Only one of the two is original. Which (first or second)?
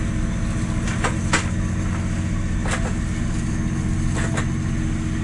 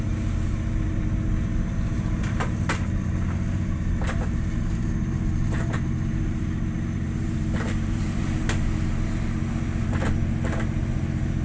first